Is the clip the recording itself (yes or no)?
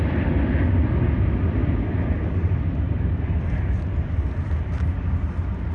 no